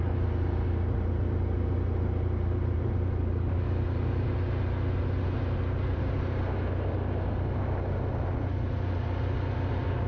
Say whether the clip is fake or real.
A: real